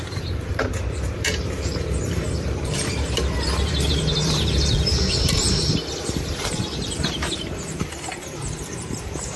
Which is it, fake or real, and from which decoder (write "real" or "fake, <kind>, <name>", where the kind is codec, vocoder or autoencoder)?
fake, vocoder, BigVGAN v2